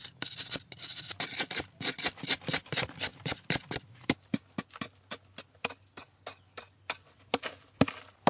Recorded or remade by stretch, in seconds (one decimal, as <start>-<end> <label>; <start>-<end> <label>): 0.0-8.3 recorded